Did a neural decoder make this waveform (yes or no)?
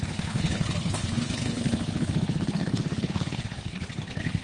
yes